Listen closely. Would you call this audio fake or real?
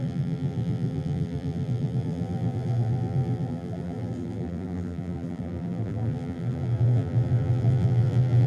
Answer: fake